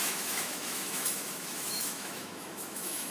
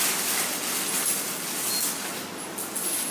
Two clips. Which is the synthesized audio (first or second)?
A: first